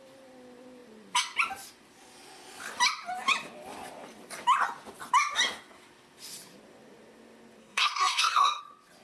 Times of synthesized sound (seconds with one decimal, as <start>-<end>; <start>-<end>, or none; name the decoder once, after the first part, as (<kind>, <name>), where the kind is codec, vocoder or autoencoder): 7.6-8.6 (codec, SNAC)